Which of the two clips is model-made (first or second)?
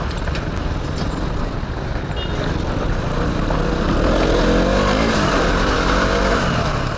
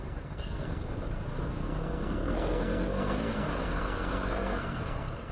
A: second